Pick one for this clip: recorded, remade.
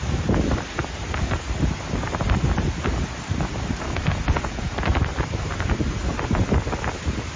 recorded